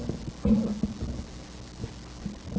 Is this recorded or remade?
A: recorded